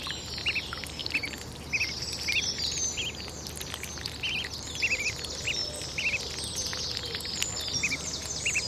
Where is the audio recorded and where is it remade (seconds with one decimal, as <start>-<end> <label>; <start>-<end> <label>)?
0.0-8.7 recorded